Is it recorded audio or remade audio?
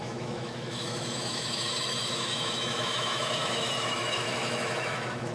remade